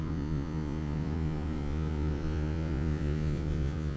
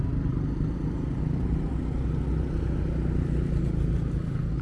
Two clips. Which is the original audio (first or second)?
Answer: second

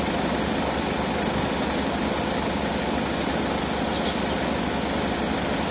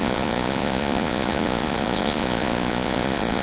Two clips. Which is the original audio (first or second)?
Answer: first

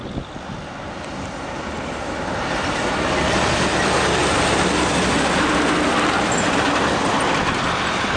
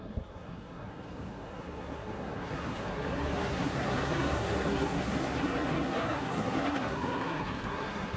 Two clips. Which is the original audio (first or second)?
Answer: first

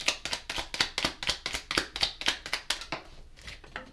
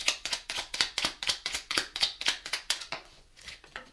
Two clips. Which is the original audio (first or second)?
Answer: first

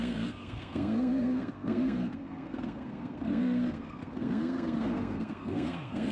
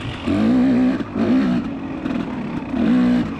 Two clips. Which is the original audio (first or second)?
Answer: second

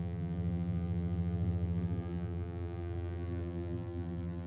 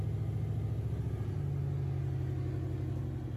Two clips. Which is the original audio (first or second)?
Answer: second